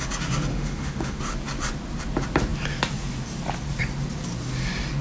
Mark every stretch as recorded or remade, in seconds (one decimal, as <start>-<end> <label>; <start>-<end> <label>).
0.0-0.5 recorded; 0.5-1.2 remade; 1.2-5.0 recorded